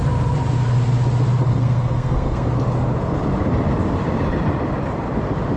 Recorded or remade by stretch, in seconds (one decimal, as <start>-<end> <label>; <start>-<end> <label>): 0.0-1.5 recorded; 1.5-2.5 remade; 2.5-5.6 recorded

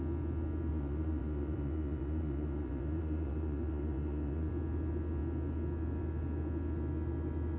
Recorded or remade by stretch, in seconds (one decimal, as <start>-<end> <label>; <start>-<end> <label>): 0.0-0.7 recorded; 0.7-4.5 remade; 4.5-7.6 recorded

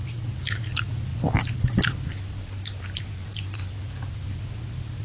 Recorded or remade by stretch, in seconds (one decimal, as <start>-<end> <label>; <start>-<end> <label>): 0.0-5.0 recorded

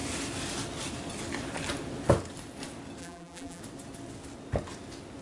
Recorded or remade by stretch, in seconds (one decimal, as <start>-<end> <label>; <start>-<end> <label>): 0.0-3.0 recorded; 3.0-3.6 remade; 3.6-5.2 recorded

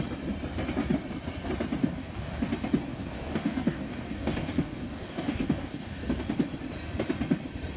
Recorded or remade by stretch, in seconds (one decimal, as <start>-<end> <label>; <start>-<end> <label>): 0.0-1.8 recorded; 1.8-2.4 remade; 2.4-2.9 recorded; 2.9-6.2 remade; 6.2-7.8 recorded

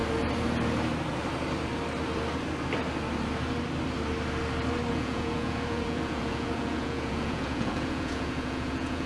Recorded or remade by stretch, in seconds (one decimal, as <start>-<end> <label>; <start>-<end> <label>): 0.0-4.9 recorded; 4.9-9.1 remade

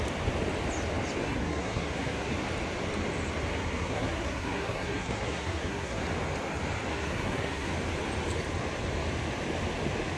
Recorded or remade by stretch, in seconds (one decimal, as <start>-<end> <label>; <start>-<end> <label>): 0.0-1.2 recorded; 1.2-2.3 remade; 2.3-3.5 recorded; 3.5-6.0 remade; 6.0-6.9 recorded; 6.9-7.7 remade; 7.7-10.2 recorded